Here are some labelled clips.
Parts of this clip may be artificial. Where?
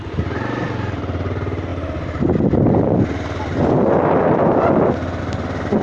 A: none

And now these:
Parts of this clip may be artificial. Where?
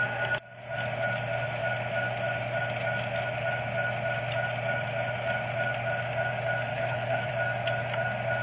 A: 6.7-7.3 (codec, HILCodec)